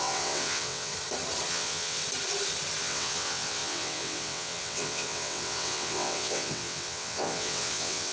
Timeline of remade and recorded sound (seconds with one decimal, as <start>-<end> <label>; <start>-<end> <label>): 0.0-0.9 remade; 0.9-1.5 recorded; 1.5-2.0 remade; 2.0-2.8 recorded; 2.8-8.1 remade